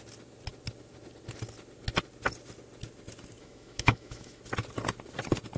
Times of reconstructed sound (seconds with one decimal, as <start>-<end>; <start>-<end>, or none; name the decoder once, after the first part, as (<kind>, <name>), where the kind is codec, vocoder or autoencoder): 3.4-4.4 (autoencoder, DAC-VAE)